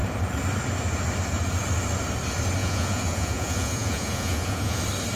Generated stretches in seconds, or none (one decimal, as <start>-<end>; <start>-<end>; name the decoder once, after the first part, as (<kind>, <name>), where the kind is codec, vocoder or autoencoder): 2.6-4.8 (vocoder, Vocos)